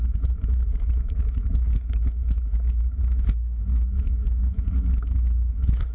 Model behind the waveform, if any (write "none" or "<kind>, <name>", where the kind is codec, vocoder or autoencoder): autoencoder, DAC-VAE